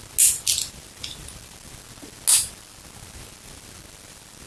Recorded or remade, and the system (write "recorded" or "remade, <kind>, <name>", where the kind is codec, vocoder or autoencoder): recorded